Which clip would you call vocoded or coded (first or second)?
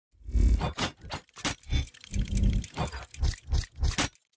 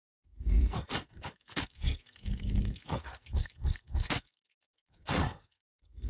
second